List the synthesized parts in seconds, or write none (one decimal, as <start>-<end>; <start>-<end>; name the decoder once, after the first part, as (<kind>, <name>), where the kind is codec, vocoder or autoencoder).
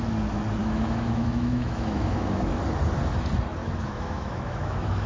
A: 0.6-2.6 (autoencoder, DAC-VAE); 3.6-5.1